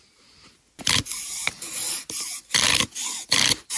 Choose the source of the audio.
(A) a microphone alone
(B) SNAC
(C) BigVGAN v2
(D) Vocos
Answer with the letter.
A